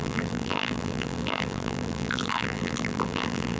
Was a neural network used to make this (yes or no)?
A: yes